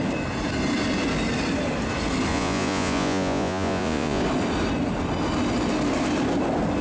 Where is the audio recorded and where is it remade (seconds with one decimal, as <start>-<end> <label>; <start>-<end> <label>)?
0.0-2.3 recorded; 2.3-4.2 remade; 4.2-6.8 recorded